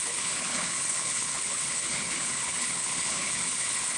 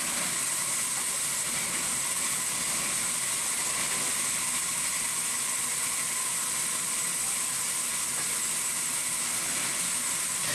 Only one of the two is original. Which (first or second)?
second